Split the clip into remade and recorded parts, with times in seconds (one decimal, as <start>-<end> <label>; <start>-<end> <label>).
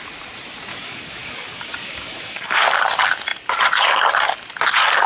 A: 0.0-0.7 recorded; 0.7-2.6 remade; 2.6-5.1 recorded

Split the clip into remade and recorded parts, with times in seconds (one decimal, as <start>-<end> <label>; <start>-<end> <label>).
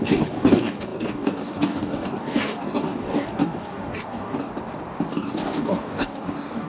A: 0.0-4.5 remade; 4.5-5.1 recorded; 5.1-6.7 remade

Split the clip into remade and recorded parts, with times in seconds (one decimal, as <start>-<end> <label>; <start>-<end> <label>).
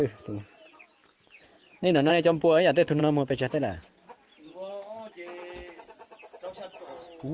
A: 0.0-1.5 recorded; 1.5-2.1 remade; 2.1-7.3 recorded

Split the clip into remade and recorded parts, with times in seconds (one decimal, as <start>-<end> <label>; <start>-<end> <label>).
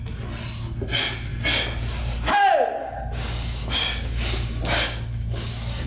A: 0.0-2.8 recorded; 2.8-5.9 remade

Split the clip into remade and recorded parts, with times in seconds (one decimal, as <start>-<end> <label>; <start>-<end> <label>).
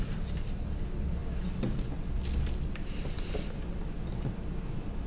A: 0.0-5.1 recorded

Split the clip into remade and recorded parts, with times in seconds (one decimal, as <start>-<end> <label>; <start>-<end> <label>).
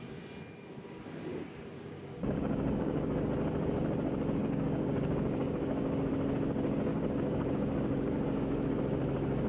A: 0.0-1.3 recorded; 1.3-3.1 remade; 3.1-4.4 recorded; 4.4-6.1 remade; 6.1-6.9 recorded; 6.9-8.7 remade; 8.7-9.5 recorded